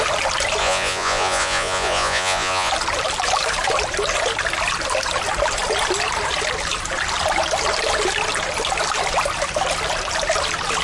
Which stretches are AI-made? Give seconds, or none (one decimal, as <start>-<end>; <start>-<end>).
0.6-2.7